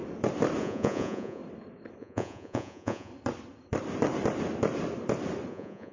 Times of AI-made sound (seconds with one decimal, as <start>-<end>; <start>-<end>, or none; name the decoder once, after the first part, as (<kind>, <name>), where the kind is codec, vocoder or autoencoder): 0.6-1.4 (vocoder, Vocos); 2.0-3.1; 5.5-5.9